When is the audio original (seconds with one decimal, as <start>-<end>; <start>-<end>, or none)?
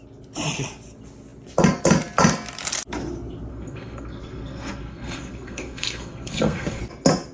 0.0-3.5; 6.8-7.3